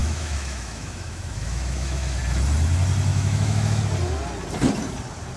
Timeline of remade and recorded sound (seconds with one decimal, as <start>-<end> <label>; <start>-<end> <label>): 0.0-2.2 remade; 2.2-3.1 recorded; 3.1-3.8 remade; 3.8-5.4 recorded